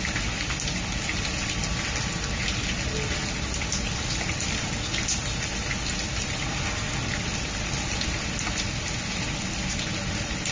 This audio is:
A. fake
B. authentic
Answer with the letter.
B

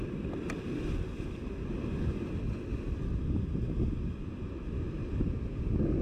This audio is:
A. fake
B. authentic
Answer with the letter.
B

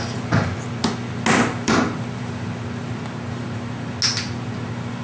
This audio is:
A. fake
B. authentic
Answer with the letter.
B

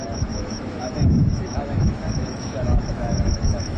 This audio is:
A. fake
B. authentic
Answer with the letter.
A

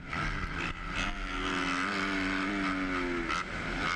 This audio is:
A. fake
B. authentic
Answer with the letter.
B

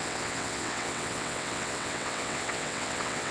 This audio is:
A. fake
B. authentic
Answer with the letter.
A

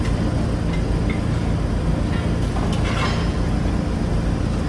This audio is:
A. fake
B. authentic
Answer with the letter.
B